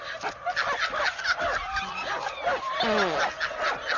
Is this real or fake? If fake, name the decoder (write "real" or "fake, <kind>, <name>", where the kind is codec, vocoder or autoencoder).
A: real